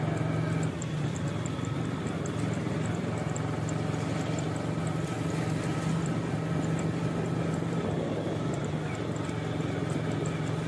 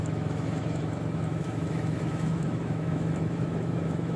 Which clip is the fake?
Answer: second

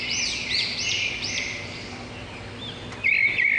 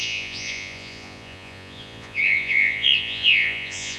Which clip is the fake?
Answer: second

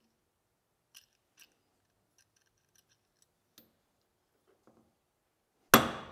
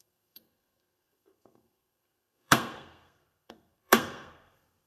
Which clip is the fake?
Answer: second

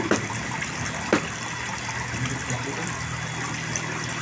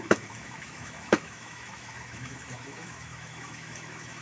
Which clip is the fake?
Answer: second